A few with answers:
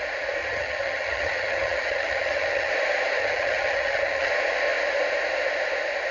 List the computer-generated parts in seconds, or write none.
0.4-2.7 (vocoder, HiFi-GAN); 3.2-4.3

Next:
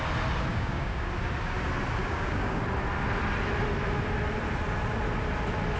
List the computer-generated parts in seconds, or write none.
0.5-1.1 (codec, DAC); 2.0-2.6

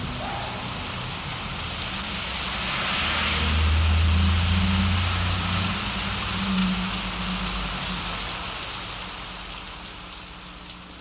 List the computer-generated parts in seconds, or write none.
none

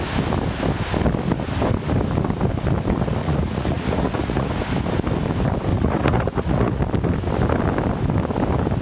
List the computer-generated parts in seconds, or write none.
3.2-4.5 (vocoder, Vocos); 5.7-6.8

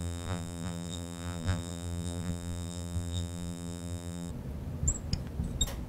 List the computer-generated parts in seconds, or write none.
0.0-4.3 (vocoder, BigVGAN v2)